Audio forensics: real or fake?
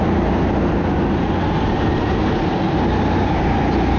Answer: real